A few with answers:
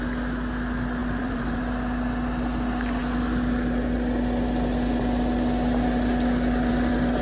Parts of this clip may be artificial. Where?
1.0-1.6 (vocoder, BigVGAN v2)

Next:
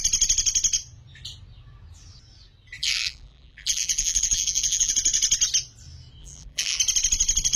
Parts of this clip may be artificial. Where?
2.8-4.9 (vocoder, BigVGAN v2); 6.2-6.8